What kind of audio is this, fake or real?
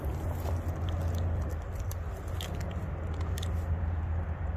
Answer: real